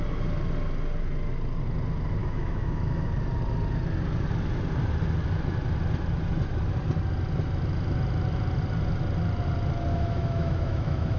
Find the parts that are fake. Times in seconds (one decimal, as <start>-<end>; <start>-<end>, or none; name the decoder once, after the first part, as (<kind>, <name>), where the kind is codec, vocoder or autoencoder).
2.2-3.1 (autoencoder, DAC-VAE); 9.9-11.2